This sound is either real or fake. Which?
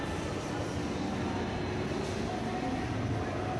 real